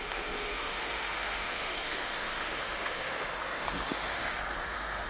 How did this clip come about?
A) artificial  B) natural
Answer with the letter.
A